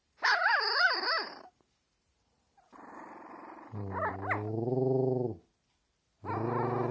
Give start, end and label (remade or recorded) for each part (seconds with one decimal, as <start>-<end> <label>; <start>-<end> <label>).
0.0-4.1 remade; 4.1-6.9 recorded